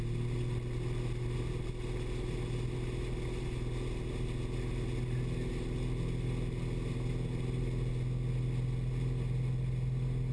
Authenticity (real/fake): real